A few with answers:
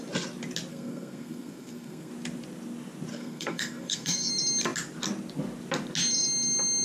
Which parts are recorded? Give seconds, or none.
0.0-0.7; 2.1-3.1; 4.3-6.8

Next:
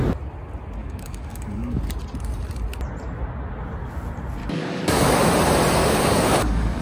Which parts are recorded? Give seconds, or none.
0.0-0.8; 1.8-4.4; 5.3-5.8

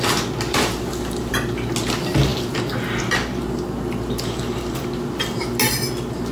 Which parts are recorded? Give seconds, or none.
0.0-6.3

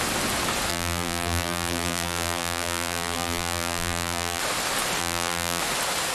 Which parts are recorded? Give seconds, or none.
0.0-0.7; 4.4-5.0; 5.6-6.1

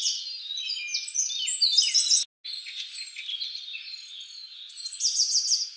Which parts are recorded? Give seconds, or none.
0.0-5.8

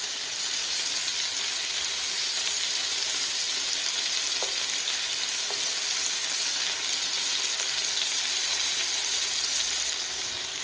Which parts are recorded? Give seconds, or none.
0.6-1.8; 3.8-8.0